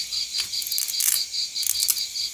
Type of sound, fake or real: real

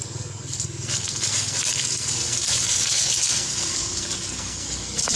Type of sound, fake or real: fake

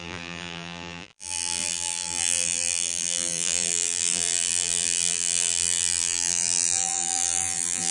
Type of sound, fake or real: fake